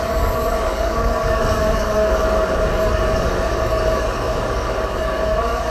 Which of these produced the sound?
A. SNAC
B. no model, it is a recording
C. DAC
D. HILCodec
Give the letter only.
C